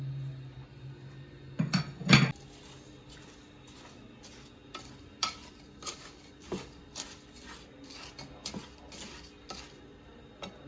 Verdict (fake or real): real